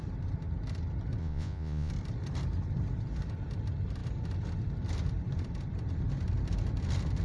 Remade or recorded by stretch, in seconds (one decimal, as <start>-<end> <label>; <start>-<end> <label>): 0.0-1.2 recorded; 1.2-1.9 remade; 1.9-7.2 recorded